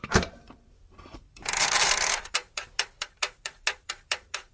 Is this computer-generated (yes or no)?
yes